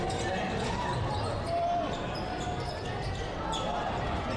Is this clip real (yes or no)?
yes